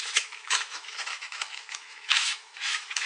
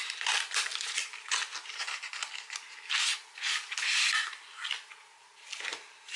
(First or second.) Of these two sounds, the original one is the second